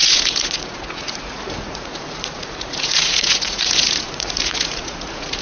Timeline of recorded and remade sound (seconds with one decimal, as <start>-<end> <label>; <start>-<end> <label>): 0.0-5.4 remade